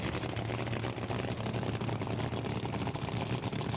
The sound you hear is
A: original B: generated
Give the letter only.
A